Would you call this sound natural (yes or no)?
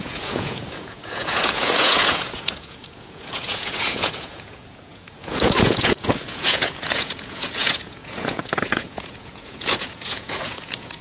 no